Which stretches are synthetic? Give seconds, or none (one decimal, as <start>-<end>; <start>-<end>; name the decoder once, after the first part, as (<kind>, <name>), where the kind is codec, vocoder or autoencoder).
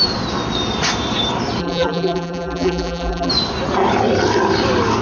1.6-3.3 (vocoder, BigVGAN v2)